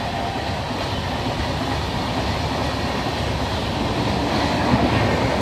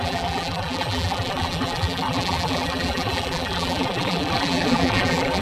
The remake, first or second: second